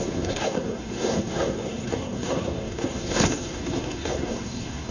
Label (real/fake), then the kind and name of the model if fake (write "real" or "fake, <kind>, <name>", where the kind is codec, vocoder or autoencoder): fake, codec, SNAC